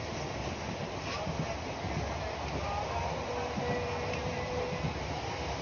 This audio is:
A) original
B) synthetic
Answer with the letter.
A